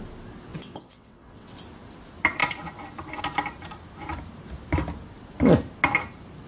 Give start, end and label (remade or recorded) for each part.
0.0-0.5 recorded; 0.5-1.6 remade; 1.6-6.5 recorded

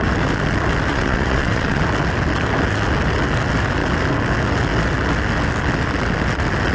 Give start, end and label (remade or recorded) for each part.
0.0-0.9 recorded; 0.9-1.8 remade; 1.8-6.7 recorded

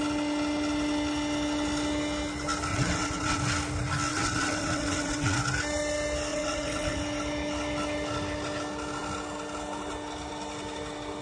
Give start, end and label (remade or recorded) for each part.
0.0-2.7 recorded; 2.7-3.4 remade; 3.4-4.1 recorded; 4.1-5.4 remade; 5.4-6.3 recorded; 6.3-7.0 remade; 7.0-11.2 recorded

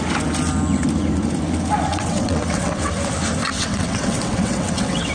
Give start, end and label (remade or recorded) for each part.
0.0-1.9 recorded; 1.9-2.9 remade; 2.9-3.4 recorded; 3.4-5.1 remade

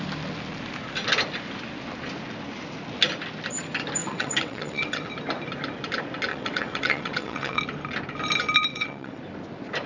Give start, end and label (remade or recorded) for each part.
0.0-4.0 recorded; 4.0-5.1 remade; 5.1-6.3 recorded; 6.3-7.6 remade; 7.6-8.7 recorded; 8.7-9.2 remade; 9.2-9.9 recorded

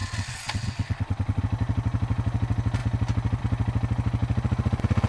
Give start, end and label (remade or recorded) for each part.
0.0-1.4 remade; 1.4-5.1 recorded